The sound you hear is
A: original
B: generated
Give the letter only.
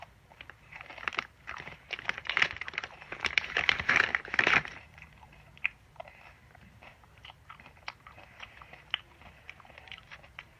B